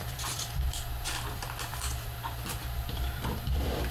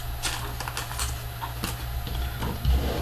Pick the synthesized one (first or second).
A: first